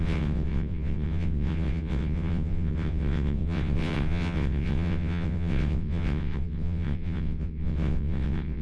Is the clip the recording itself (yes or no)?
no